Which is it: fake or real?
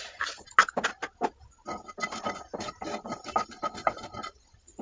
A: real